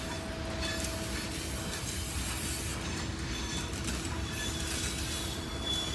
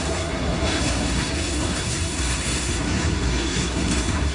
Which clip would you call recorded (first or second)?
first